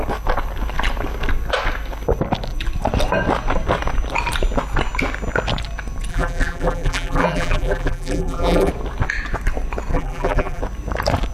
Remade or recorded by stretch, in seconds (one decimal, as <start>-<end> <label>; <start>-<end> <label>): 0.0-6.1 recorded; 6.1-8.7 remade; 8.7-9.9 recorded; 9.9-10.6 remade; 10.6-11.3 recorded